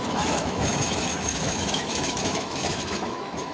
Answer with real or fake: fake